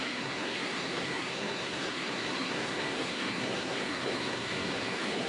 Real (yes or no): no